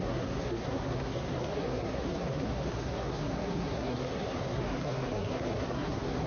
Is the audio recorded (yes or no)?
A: no